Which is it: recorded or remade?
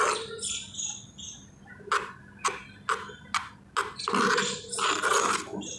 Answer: recorded